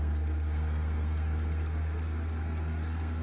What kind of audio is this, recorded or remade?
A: remade